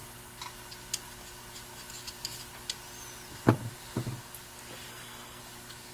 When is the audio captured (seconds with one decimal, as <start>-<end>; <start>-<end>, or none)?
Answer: 0.0-4.9; 5.4-5.9

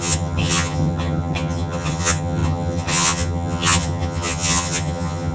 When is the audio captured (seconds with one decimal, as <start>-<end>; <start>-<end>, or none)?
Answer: none

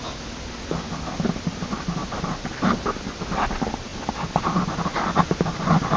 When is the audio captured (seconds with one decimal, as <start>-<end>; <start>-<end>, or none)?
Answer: 0.0-6.0

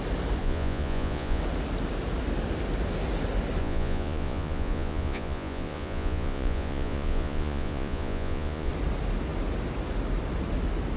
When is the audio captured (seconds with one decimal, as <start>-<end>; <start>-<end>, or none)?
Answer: 0.0-0.4; 1.4-3.6; 8.7-11.0

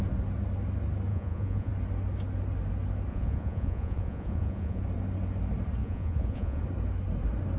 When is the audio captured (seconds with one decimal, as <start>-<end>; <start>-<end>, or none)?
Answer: 0.0-1.1; 1.7-3.1; 4.8-5.8; 6.6-7.6

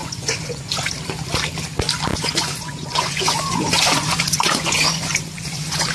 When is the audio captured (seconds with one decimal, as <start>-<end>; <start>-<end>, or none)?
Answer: 0.9-2.1